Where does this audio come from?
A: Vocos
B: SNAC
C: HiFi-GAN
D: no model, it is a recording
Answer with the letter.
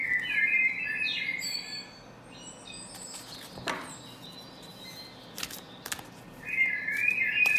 D